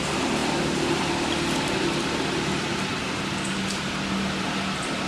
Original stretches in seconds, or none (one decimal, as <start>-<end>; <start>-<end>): 0.0-5.1